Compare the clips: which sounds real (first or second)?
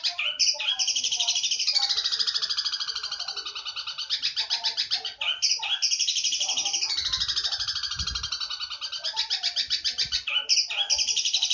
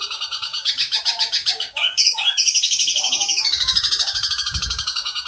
first